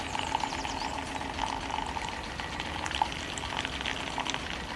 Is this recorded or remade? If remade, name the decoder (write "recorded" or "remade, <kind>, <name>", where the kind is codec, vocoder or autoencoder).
recorded